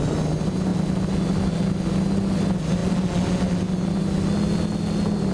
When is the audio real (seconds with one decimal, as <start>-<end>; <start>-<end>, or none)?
0.0-5.3